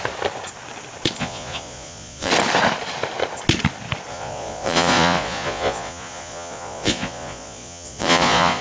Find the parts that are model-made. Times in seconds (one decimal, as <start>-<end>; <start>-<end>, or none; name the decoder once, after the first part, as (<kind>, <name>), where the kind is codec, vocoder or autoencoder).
1.2-2.3 (vocoder, Vocos); 4.1-8.6